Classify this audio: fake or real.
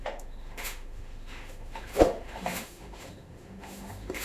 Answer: fake